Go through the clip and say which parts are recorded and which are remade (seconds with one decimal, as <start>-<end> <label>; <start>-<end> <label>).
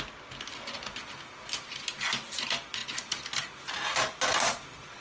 0.0-5.0 recorded